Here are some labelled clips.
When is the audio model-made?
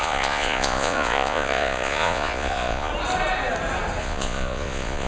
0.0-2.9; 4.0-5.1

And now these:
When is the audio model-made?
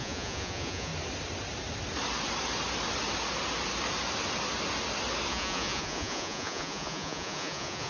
0.0-0.9; 5.3-7.9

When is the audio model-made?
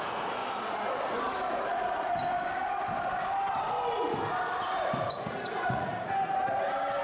0.0-0.4; 1.2-2.2; 5.1-5.9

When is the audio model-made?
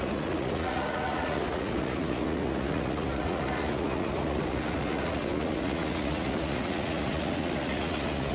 0.0-8.3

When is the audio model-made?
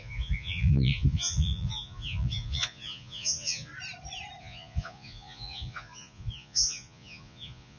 0.0-3.7; 4.4-7.8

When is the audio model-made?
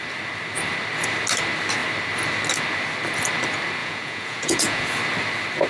3.8-5.0